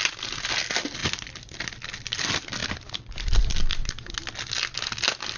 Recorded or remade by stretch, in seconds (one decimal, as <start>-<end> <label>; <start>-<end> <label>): 0.0-5.4 recorded

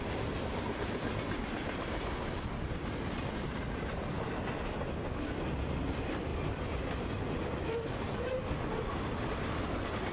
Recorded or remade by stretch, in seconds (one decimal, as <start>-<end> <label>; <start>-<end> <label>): 0.0-10.1 recorded

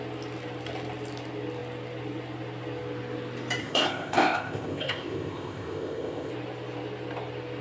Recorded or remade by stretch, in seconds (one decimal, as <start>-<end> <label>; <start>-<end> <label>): 0.0-3.6 recorded; 3.6-6.3 remade; 6.3-7.6 recorded

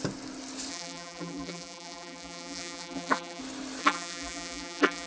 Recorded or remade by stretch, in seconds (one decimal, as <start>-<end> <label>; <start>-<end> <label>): 0.0-0.7 recorded; 0.7-3.4 remade; 3.4-3.8 recorded; 3.8-5.1 remade

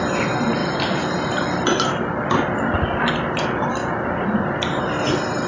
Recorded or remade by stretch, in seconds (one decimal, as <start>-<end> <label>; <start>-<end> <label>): 0.0-0.6 recorded; 0.6-1.9 remade; 1.9-5.5 recorded

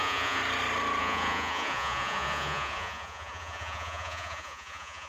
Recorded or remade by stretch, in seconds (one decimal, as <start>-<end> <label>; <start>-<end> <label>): 0.0-0.4 remade; 0.4-1.0 recorded; 1.0-5.1 remade